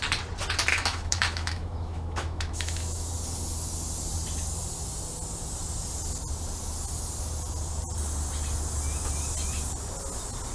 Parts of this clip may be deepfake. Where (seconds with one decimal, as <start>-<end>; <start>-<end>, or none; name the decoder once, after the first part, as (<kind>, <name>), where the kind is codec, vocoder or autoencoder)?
0.7-3.1 (autoencoder, DAC-VAE)